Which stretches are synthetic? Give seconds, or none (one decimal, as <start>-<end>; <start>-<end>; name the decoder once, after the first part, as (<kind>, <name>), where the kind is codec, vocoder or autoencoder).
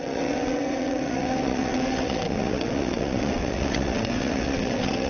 0.0-5.1 (vocoder, WaveNeXt)